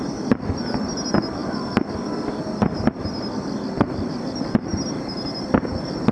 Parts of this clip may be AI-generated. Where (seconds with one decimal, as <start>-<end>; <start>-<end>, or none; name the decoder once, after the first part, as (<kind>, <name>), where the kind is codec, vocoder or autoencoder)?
4.7-6.1 (vocoder, BigVGAN v2)